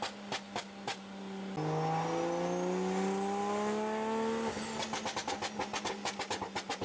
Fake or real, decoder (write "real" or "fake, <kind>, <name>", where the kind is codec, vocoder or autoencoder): real